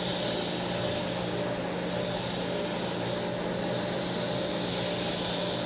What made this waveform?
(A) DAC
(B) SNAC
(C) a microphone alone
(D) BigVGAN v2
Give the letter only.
C